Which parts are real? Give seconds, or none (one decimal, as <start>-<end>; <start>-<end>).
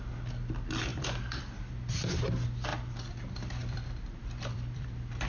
0.0-0.9; 2.0-2.7; 3.2-3.6